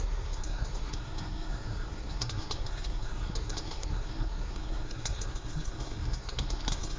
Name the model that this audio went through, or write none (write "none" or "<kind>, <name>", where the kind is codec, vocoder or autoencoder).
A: codec, SNAC